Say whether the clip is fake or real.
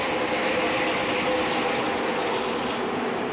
real